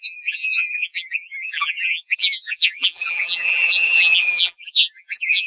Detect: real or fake fake